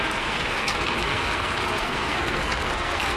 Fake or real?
fake